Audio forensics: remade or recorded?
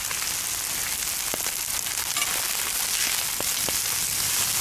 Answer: recorded